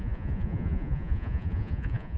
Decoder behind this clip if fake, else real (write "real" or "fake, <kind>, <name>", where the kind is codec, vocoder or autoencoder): fake, vocoder, Vocos